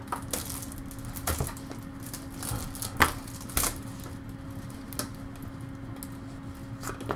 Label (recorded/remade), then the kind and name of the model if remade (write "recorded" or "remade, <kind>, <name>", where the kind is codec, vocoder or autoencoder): recorded